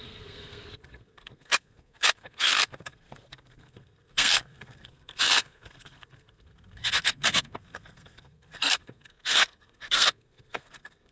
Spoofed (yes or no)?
yes